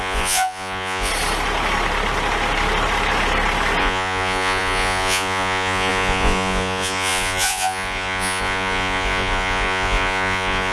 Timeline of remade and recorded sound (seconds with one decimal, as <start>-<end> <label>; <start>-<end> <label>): 0.0-1.1 remade; 1.1-3.8 recorded; 3.8-10.7 remade